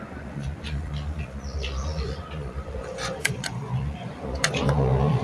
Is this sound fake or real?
fake